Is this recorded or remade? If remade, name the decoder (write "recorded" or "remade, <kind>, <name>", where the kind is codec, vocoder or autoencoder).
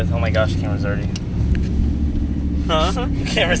recorded